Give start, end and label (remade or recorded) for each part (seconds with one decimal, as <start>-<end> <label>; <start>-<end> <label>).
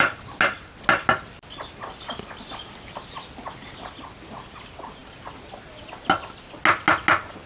0.0-7.5 recorded